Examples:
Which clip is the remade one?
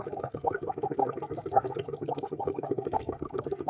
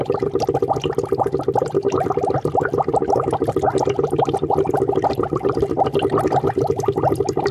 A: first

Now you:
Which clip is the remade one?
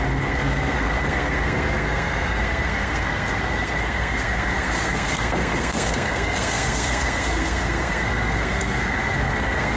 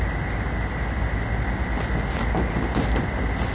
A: first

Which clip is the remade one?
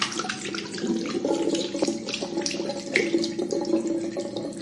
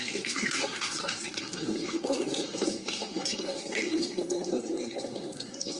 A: second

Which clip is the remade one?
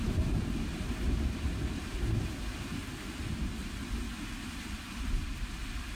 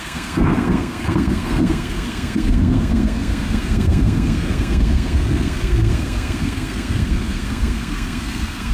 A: second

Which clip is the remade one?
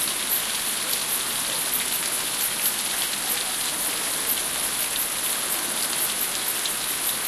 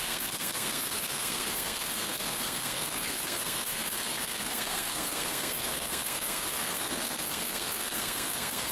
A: second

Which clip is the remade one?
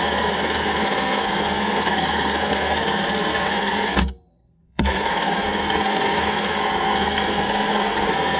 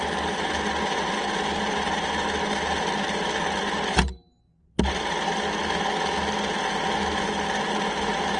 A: first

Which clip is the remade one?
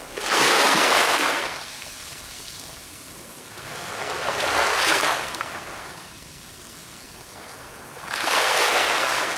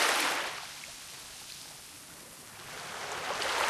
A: first